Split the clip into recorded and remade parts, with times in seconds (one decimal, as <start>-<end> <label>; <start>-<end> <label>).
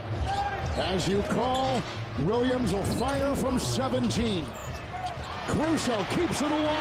0.0-4.6 remade; 4.6-5.2 recorded; 5.2-6.8 remade